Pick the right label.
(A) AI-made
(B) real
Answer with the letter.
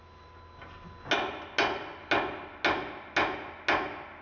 B